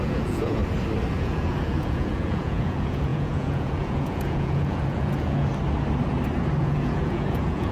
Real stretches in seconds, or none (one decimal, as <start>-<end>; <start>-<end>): 0.6-1.2; 5.5-6.6